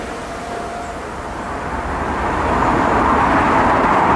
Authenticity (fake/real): fake